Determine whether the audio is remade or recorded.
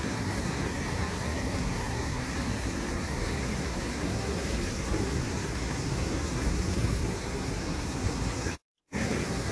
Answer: remade